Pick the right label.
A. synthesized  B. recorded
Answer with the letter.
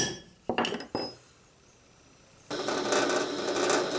B